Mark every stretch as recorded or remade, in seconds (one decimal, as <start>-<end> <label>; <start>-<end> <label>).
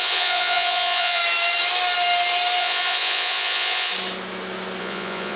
0.0-1.2 remade; 1.2-2.6 recorded; 2.6-3.9 remade; 3.9-4.8 recorded; 4.8-5.4 remade